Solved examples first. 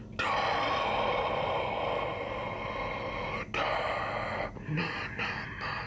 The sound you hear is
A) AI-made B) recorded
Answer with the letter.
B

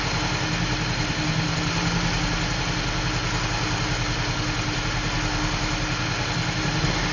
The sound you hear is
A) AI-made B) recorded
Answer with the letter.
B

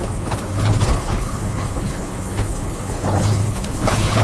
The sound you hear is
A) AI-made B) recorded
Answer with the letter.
A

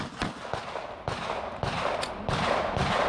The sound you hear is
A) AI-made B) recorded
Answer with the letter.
B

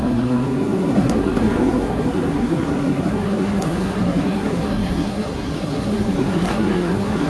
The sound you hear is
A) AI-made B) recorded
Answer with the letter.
A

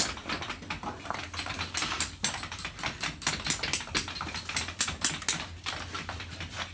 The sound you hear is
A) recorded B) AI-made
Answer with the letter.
A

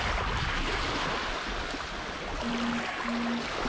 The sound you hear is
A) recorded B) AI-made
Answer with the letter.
A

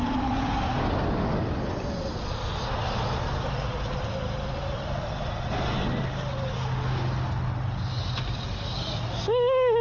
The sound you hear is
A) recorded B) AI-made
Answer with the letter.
A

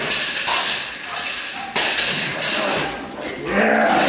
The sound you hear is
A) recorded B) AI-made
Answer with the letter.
A